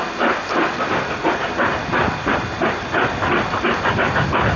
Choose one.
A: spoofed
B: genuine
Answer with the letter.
B